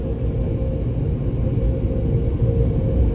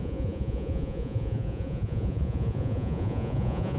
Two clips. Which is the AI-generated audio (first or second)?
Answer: second